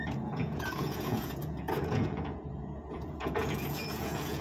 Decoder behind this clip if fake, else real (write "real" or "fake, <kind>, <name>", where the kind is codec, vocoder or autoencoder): fake, vocoder, Vocos